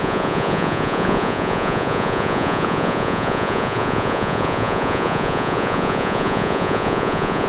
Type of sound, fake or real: fake